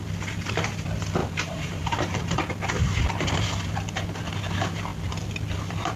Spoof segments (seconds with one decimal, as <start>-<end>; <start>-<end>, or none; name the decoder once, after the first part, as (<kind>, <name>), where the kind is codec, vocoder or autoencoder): 1.2-2.4 (vocoder, BigVGAN v2)